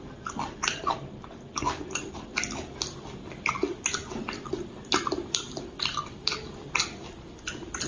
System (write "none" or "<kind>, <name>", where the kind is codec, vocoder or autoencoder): none